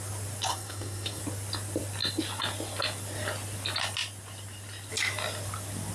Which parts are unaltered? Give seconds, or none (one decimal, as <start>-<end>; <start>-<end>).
0.0-0.5; 1.2-5.9